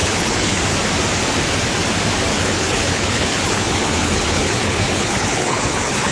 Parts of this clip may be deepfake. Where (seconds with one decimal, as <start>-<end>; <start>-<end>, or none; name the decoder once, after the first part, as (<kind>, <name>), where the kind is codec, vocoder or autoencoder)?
0.0-0.6 (codec, HILCodec); 2.3-6.1